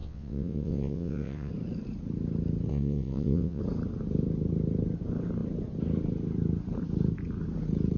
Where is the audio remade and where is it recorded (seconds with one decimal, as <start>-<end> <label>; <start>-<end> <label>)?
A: 0.0-1.5 remade; 1.5-2.7 recorded; 2.7-3.6 remade; 3.6-8.0 recorded

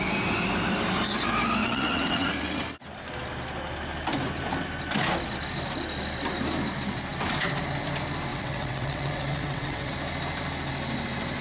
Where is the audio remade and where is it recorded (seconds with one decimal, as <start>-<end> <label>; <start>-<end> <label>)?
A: 0.0-1.6 recorded; 1.6-2.3 remade; 2.3-8.3 recorded; 8.3-9.9 remade; 9.9-11.4 recorded

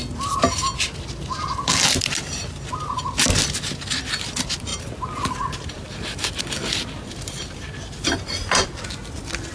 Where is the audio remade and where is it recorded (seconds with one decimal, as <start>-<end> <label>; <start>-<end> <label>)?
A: 0.0-9.5 recorded

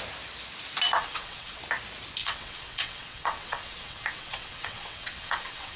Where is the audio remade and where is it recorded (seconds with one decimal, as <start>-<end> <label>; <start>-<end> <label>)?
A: 0.0-1.0 recorded; 1.0-1.6 remade; 1.6-2.2 recorded; 2.2-5.8 remade

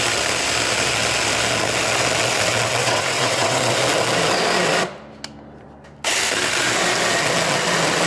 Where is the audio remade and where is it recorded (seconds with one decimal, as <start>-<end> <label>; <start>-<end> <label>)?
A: 0.0-2.8 recorded; 2.8-3.6 remade; 3.6-8.1 recorded

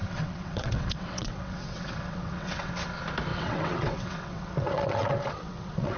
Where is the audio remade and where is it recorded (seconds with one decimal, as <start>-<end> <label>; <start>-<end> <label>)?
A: 0.0-2.7 remade; 2.7-3.3 recorded; 3.3-6.0 remade